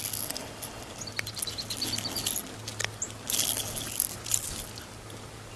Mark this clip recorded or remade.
recorded